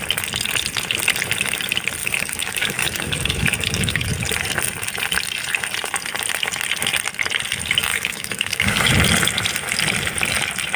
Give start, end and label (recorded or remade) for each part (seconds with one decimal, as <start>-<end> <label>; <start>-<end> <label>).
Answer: 0.0-2.0 recorded; 2.0-4.1 remade; 4.1-7.9 recorded; 7.9-8.9 remade; 8.9-10.8 recorded